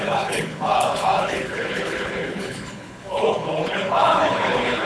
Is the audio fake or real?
fake